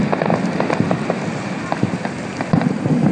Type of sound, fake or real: real